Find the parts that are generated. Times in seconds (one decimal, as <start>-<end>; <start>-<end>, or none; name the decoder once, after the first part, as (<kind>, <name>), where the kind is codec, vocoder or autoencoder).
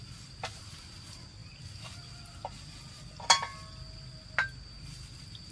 none